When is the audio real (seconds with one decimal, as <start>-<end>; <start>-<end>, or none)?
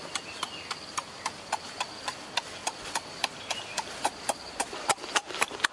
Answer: 0.0-5.7